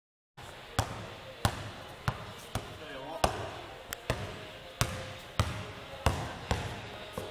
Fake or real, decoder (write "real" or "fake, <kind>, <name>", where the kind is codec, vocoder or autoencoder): real